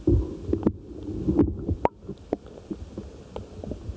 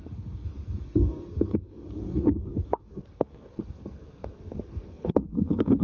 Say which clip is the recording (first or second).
first